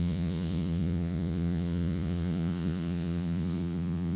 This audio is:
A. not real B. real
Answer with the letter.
A